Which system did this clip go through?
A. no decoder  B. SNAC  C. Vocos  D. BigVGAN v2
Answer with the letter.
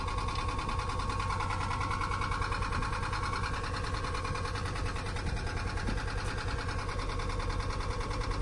A